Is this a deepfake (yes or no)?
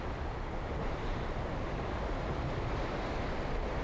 no